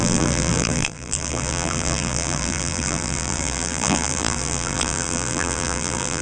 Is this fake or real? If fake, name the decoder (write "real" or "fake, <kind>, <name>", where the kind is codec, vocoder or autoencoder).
fake, vocoder, BigVGAN v2